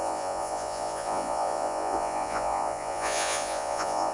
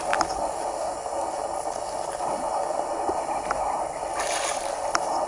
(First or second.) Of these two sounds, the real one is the second